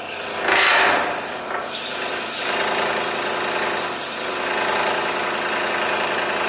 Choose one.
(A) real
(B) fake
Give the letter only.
A